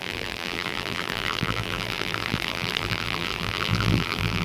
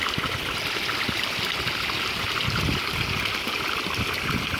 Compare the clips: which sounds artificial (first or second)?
first